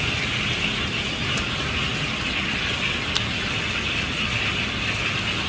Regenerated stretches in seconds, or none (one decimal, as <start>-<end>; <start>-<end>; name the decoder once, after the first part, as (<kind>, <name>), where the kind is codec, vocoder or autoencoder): 1.9-5.5 (vocoder, BigVGAN v2)